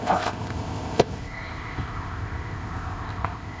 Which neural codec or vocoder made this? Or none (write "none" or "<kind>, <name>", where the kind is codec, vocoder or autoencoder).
codec, ZipCodec